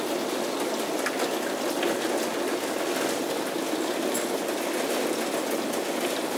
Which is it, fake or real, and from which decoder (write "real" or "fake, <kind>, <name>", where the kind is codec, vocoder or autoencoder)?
real